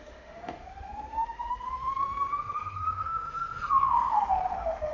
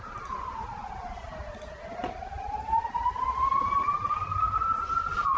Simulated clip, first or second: first